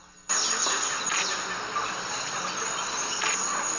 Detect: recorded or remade recorded